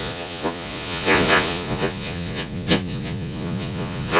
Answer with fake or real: fake